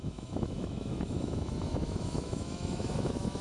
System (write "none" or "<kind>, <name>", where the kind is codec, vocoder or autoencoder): autoencoder, DAC-VAE